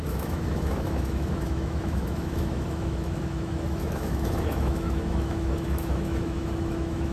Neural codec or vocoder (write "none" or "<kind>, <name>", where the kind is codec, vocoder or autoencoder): autoencoder, DAC-VAE